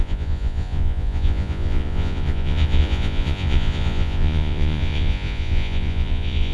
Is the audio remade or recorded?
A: remade